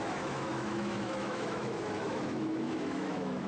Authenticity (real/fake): fake